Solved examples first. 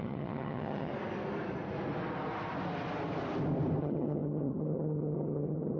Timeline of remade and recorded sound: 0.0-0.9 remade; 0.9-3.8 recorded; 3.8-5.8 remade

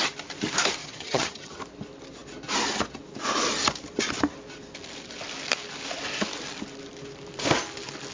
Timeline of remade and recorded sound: 0.0-0.8 recorded; 0.8-1.6 remade; 1.6-8.1 recorded

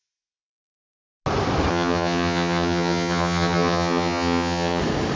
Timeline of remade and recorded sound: 0.0-1.7 recorded; 1.7-4.8 remade; 4.8-5.2 recorded

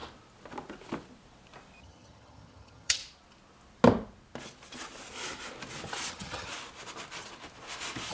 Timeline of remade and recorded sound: 0.0-1.8 recorded; 1.8-3.0 remade; 3.0-6.1 recorded; 6.1-6.5 remade; 6.5-8.1 recorded

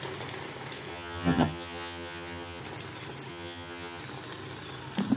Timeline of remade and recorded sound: 0.0-0.9 recorded; 0.9-2.6 remade; 2.6-3.3 recorded; 3.3-4.0 remade; 4.0-5.2 recorded